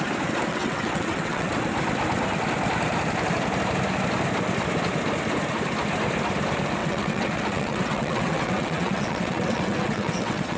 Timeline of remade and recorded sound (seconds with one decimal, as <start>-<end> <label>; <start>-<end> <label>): 0.0-0.5 recorded; 0.5-1.5 remade; 1.5-6.8 recorded; 6.8-10.6 remade